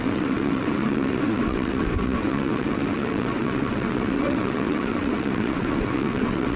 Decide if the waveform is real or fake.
fake